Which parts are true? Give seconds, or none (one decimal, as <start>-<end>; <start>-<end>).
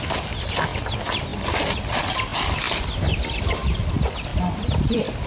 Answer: 0.0-0.7; 3.9-5.3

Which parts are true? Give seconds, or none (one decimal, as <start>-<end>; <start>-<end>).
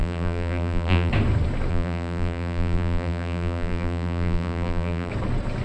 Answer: 1.1-1.7; 5.1-5.6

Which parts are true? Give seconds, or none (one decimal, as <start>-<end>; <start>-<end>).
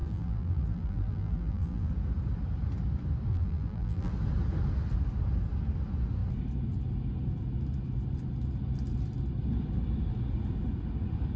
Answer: 1.9-3.3; 4.1-11.4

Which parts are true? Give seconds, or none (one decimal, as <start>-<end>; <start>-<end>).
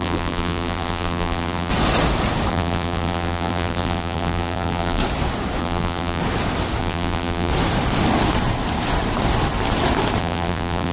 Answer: 1.7-2.5; 5.0-5.6; 6.2-6.8; 7.5-10.2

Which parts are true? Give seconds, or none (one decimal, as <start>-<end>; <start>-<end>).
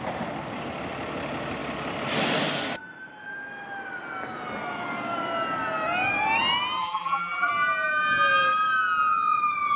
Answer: 0.0-6.8; 7.5-9.8